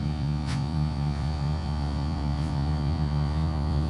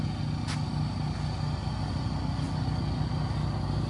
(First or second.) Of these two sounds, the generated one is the first